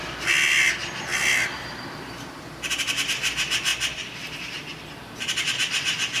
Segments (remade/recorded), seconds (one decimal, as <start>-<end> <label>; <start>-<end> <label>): 0.0-0.7 remade; 0.7-1.1 recorded; 1.1-2.4 remade; 2.4-3.7 recorded; 3.7-4.5 remade; 4.5-6.2 recorded